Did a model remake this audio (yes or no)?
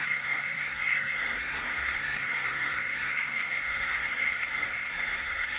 yes